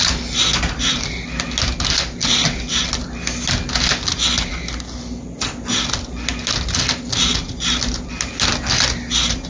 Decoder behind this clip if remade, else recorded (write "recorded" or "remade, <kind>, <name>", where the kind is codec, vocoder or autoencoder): recorded